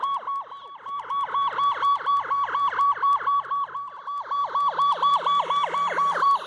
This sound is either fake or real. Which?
fake